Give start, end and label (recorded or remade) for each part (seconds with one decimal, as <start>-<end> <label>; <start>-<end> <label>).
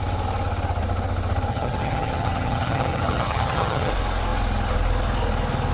0.0-1.5 recorded; 1.5-3.9 remade; 3.9-5.7 recorded